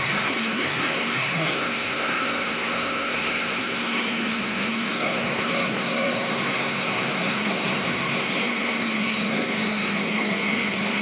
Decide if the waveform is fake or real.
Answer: fake